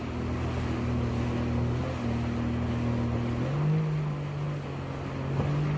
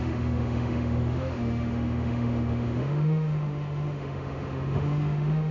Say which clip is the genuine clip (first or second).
first